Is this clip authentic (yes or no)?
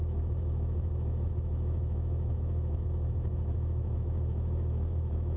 no